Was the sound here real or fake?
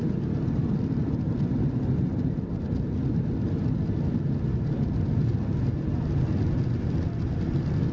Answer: real